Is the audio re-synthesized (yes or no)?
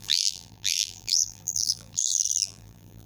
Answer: yes